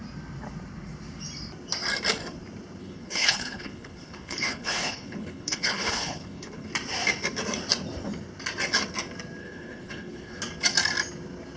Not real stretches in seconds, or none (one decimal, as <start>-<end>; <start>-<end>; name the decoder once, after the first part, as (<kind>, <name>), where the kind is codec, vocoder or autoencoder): 2.8-6.7 (codec, HILCodec); 9.4-10.4